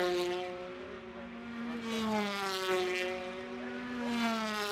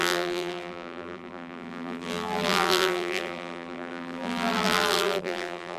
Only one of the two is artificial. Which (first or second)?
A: second